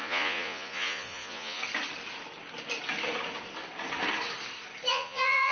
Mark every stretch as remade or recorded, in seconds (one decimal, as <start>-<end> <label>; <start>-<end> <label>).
0.0-1.6 remade; 1.6-4.9 recorded; 4.9-5.5 remade

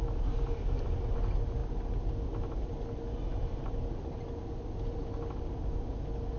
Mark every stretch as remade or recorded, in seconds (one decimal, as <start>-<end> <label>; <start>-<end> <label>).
0.0-6.4 recorded

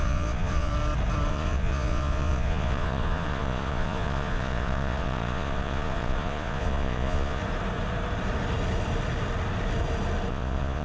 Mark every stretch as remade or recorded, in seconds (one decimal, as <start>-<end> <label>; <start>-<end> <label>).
0.0-0.7 remade; 0.7-1.3 recorded; 1.3-7.4 remade; 7.4-10.3 recorded; 10.3-10.8 remade

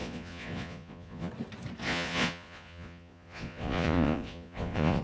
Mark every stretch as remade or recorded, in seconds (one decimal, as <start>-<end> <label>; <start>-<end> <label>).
0.0-1.3 remade; 1.3-1.8 recorded; 1.8-5.0 remade

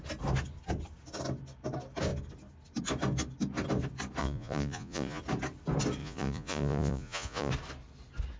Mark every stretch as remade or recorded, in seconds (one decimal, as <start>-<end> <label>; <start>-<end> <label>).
0.0-4.2 recorded; 4.2-5.2 remade; 5.2-6.0 recorded; 6.0-7.5 remade; 7.5-8.4 recorded

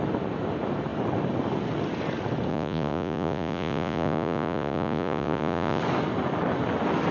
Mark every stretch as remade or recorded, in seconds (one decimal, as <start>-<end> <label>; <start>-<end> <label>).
0.0-2.5 recorded; 2.5-5.8 remade; 5.8-7.1 recorded